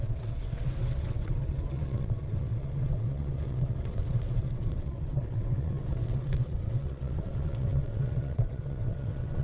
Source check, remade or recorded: remade